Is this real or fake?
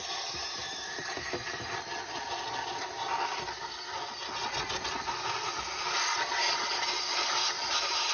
real